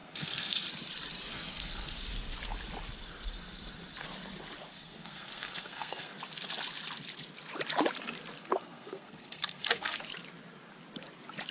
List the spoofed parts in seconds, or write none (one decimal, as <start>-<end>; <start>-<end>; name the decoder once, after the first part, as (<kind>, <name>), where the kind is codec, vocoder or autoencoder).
0.0-0.7 (codec, SNAC); 1.3-2.0; 4.7-6.1; 8.4-10.0